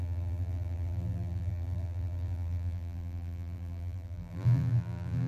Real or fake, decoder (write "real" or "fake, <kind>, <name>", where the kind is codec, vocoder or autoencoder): fake, vocoder, BigVGAN v2